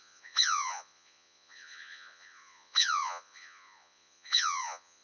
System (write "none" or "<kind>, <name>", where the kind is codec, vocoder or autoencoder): vocoder, Vocos